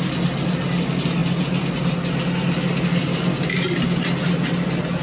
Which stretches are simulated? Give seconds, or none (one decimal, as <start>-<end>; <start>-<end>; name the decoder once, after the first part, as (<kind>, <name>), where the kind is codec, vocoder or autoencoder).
none